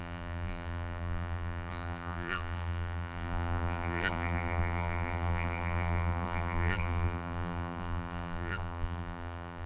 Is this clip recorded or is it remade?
remade